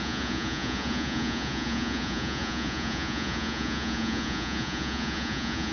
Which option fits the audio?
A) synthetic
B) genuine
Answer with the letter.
A